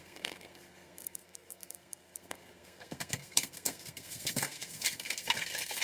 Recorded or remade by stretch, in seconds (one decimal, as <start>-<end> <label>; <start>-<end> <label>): 0.0-5.8 remade